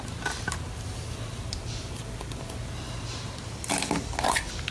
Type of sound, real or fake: real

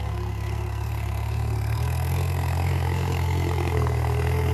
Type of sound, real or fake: fake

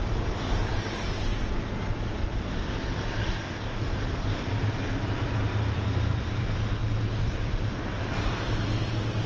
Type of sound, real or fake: fake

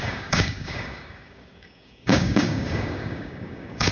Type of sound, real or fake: fake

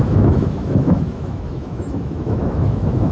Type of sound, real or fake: fake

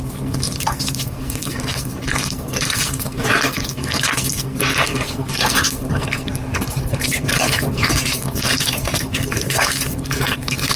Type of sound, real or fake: fake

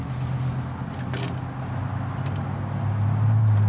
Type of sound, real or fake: real